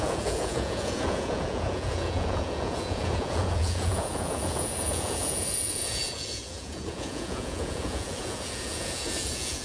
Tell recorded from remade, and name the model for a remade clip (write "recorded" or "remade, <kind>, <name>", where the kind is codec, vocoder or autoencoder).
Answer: remade, vocoder, Vocos